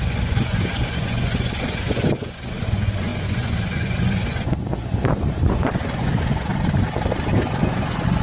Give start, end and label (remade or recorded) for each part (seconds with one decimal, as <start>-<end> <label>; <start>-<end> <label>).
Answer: 0.0-6.5 remade; 6.5-7.2 recorded; 7.2-8.2 remade